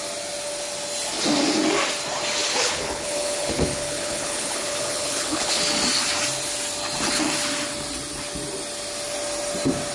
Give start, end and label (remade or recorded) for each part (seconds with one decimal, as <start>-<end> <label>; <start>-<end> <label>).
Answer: 0.0-2.4 recorded; 2.4-5.6 remade; 5.6-9.9 recorded